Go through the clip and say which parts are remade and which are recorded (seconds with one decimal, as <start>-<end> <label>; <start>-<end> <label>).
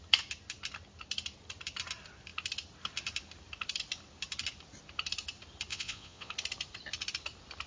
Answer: 0.0-5.7 recorded; 5.7-6.3 remade; 6.3-7.7 recorded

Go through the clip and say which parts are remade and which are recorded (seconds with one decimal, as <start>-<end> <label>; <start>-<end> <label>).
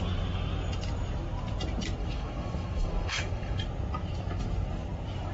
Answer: 0.0-2.0 recorded; 2.0-3.6 remade; 3.6-5.3 recorded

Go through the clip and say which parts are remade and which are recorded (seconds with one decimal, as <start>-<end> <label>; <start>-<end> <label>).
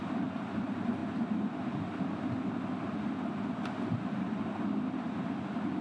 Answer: 0.0-5.8 recorded